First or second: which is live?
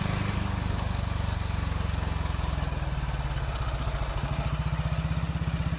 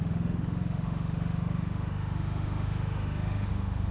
first